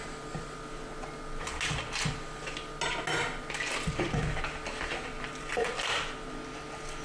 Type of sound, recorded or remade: recorded